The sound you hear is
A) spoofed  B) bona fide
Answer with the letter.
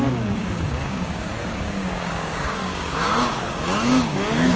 A